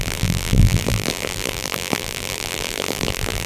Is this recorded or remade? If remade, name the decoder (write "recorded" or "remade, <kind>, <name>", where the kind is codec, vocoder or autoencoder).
remade, vocoder, BigVGAN v2